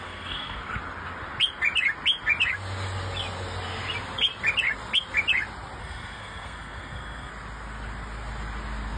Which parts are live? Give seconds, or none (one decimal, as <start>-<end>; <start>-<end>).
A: 0.6-5.8; 7.3-9.0